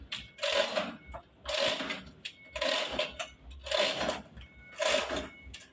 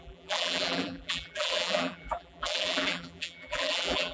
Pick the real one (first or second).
first